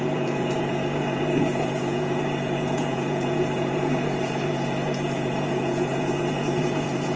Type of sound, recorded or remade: remade